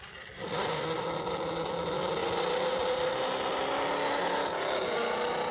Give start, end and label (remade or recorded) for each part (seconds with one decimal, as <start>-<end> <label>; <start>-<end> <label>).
0.0-5.5 recorded